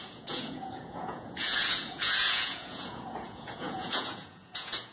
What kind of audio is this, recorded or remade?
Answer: remade